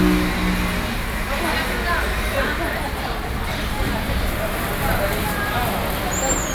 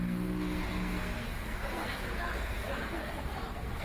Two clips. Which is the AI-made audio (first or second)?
second